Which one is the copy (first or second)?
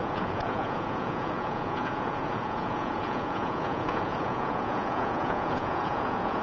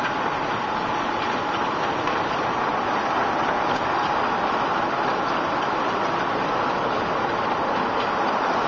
first